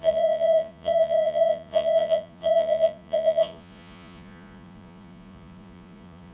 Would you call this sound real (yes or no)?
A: no